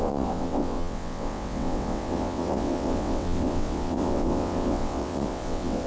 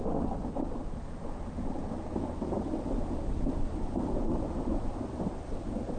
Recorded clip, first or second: second